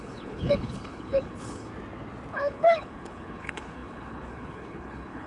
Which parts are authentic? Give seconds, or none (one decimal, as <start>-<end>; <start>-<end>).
1.7-2.3